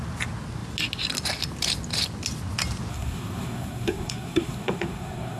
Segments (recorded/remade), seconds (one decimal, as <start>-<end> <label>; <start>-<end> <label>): 0.0-2.9 recorded; 2.9-5.4 remade